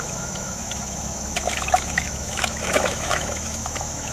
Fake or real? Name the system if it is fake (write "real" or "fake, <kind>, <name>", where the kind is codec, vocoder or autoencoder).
fake, autoencoder, DAC-VAE